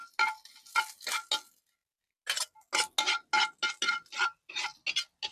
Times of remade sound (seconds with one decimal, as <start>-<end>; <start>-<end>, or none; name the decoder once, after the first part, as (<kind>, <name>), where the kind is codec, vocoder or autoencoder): none